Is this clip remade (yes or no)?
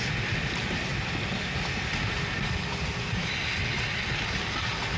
no